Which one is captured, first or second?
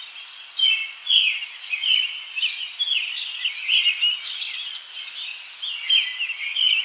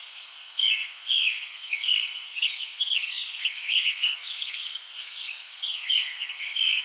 first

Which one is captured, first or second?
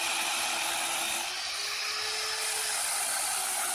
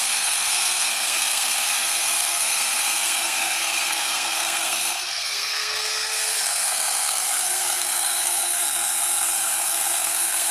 first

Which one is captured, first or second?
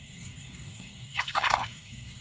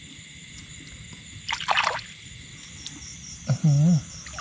second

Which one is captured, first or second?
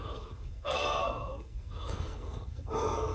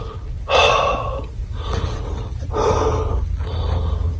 second